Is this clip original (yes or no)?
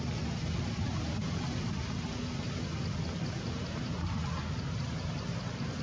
yes